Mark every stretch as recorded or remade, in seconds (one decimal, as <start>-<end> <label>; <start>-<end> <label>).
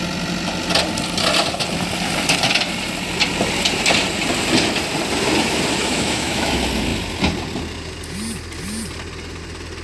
0.0-5.8 recorded; 5.8-6.5 remade; 6.5-9.8 recorded